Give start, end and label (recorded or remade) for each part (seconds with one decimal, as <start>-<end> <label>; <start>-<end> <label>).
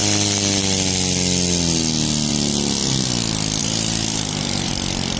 0.0-3.6 recorded; 3.6-4.7 remade; 4.7-5.2 recorded